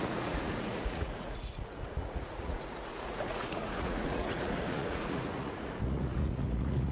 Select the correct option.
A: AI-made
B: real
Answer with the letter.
A